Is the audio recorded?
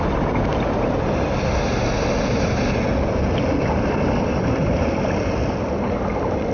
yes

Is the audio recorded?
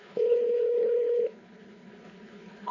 no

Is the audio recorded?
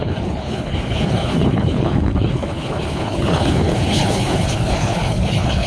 no